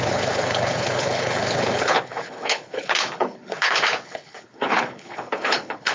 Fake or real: fake